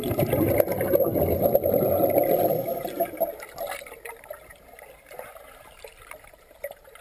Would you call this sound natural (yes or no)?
yes